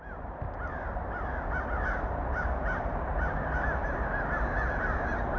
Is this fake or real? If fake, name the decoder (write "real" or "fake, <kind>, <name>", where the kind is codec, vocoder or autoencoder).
real